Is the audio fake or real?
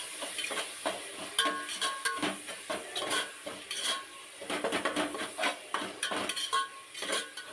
real